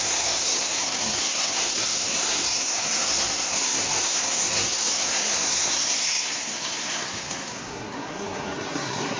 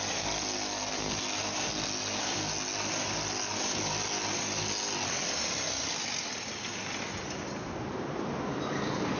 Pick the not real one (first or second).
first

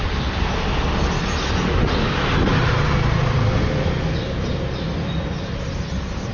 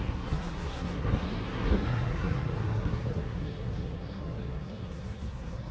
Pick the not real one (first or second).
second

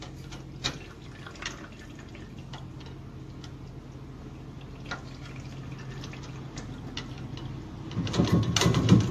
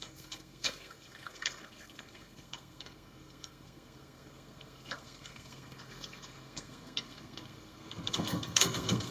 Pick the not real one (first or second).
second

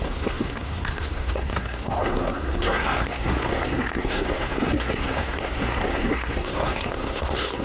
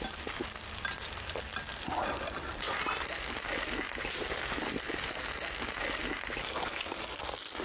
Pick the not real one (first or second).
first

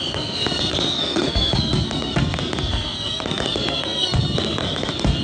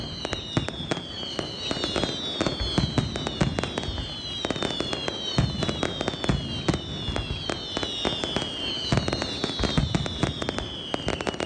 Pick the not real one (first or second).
first